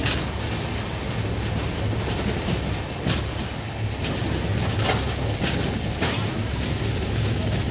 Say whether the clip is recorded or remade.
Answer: recorded